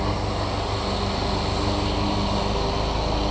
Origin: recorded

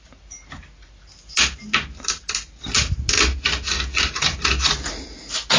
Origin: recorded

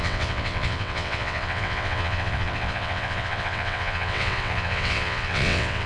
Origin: remade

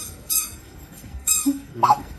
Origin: remade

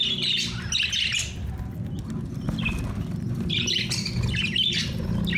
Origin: recorded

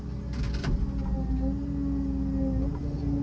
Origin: recorded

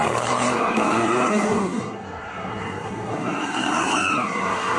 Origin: remade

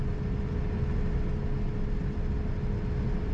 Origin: recorded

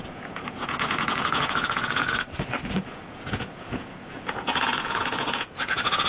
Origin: remade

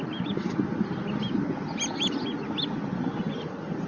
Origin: recorded